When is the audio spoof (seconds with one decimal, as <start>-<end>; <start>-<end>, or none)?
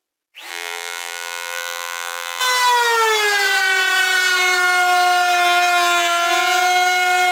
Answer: 0.5-2.4